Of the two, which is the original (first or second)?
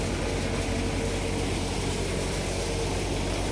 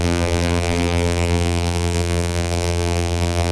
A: first